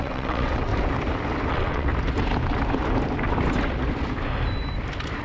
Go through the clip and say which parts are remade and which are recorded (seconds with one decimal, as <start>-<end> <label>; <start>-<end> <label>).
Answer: 0.0-0.7 remade; 0.7-1.5 recorded; 1.5-1.9 remade; 1.9-5.2 recorded